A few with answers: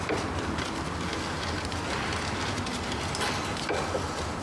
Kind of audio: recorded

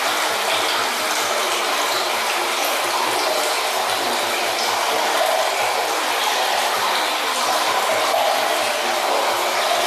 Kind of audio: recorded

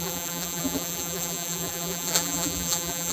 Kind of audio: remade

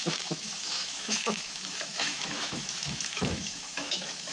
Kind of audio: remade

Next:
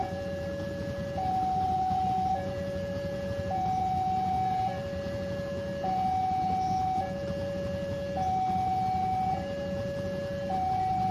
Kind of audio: remade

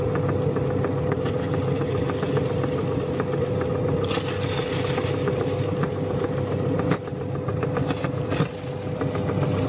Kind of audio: recorded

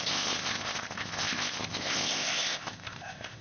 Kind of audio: remade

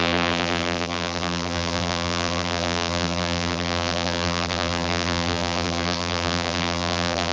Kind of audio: remade